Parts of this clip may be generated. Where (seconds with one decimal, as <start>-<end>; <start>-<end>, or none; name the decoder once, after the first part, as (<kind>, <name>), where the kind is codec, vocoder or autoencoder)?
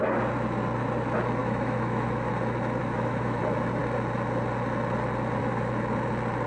1.4-2.3 (autoencoder, DAC-VAE); 2.8-3.4